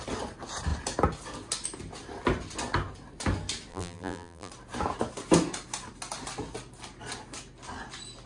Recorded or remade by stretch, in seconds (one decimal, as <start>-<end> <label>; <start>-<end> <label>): 0.0-3.7 recorded; 3.7-4.5 remade; 4.5-8.3 recorded